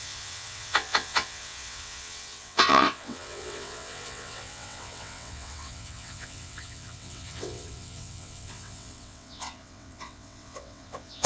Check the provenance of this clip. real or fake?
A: fake